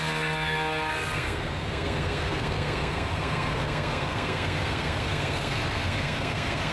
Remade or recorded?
remade